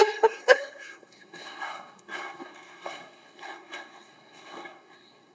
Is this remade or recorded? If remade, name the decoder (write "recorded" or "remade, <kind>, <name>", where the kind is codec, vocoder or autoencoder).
remade, codec, SNAC